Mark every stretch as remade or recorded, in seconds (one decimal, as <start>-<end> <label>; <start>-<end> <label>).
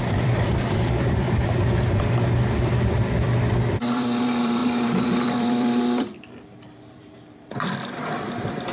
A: 0.0-8.7 remade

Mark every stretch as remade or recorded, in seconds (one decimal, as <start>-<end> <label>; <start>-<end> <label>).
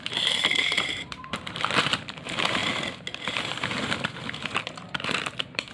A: 0.0-2.6 remade; 2.6-3.4 recorded; 3.4-5.7 remade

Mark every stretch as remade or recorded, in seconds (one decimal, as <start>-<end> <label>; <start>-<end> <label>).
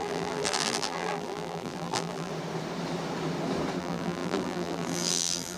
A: 0.0-2.3 remade; 2.3-3.8 recorded; 3.8-5.6 remade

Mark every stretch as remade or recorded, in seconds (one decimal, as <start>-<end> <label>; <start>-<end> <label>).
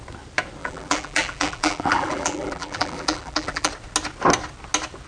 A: 0.0-0.6 recorded; 0.6-3.7 remade; 3.7-5.1 recorded